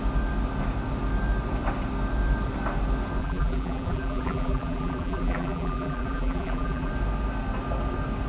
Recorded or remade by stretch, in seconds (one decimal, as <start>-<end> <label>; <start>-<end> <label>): 0.0-3.2 recorded; 3.2-6.9 remade; 6.9-8.3 recorded